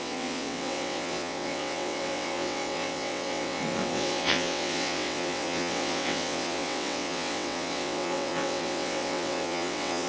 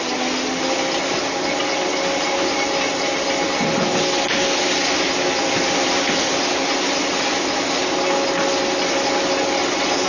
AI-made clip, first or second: first